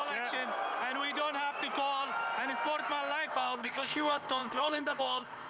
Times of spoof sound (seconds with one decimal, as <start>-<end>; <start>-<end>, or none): 3.3-5.5